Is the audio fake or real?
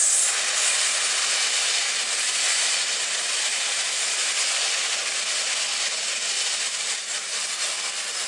real